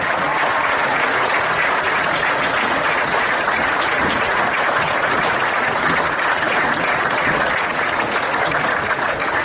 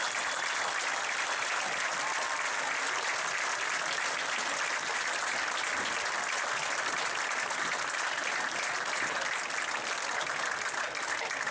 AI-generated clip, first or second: first